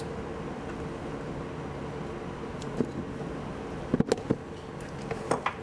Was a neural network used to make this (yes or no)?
no